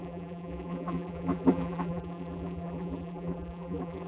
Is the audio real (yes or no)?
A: no